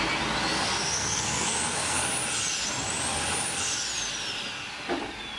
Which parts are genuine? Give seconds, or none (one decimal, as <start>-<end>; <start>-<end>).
0.0-0.5; 2.1-5.4